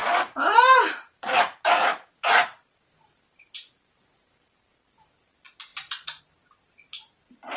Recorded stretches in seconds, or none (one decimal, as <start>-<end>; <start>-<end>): 4.6-5.7; 6.2-7.6